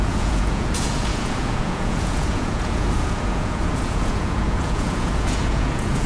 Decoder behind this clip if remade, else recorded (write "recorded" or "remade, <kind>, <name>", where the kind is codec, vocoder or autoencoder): remade, vocoder, Vocos